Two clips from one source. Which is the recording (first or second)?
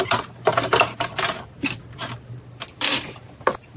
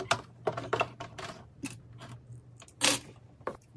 second